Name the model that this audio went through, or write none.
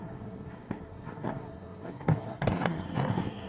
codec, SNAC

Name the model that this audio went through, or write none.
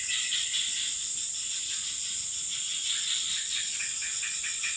none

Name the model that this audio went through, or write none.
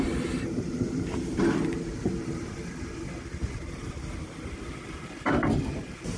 none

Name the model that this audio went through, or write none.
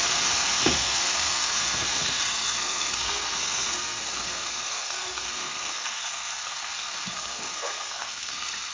codec, SNAC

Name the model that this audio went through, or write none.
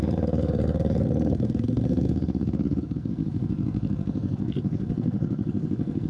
codec, SNAC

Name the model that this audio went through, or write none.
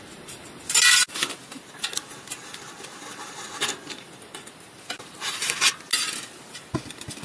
none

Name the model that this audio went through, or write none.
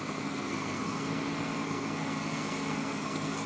codec, SNAC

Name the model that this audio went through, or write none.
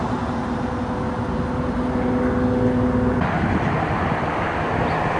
none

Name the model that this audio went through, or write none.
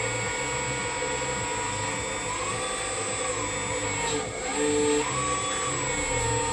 none